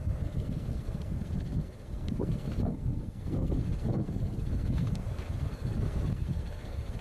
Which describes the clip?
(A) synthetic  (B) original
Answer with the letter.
A